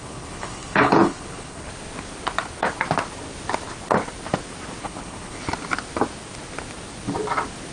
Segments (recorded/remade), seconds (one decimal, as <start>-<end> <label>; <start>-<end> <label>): 0.0-1.7 remade; 1.7-4.8 recorded; 4.8-5.4 remade; 5.4-7.7 recorded